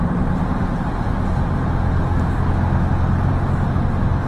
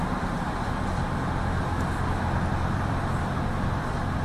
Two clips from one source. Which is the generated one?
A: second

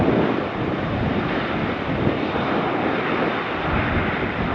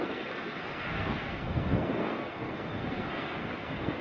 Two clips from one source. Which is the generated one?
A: second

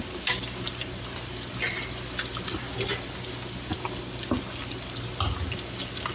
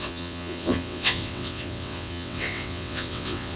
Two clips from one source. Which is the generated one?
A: second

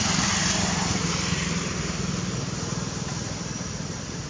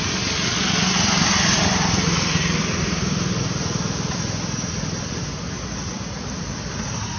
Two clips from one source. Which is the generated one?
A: second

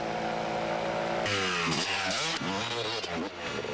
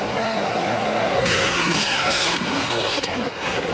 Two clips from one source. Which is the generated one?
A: second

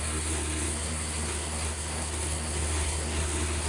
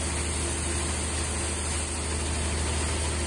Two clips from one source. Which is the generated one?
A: first